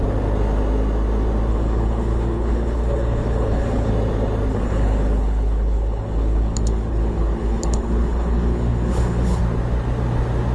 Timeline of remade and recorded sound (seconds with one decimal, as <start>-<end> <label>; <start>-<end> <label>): 0.0-1.5 recorded; 1.5-3.9 remade; 3.9-4.5 recorded; 4.5-9.4 remade; 9.4-10.5 recorded